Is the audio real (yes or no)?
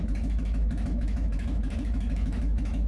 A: no